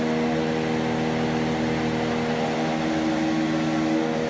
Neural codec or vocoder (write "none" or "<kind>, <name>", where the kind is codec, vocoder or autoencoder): none